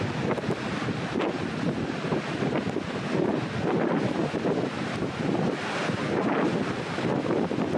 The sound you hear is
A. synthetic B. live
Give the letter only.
B